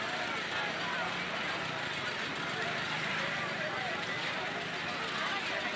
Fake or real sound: real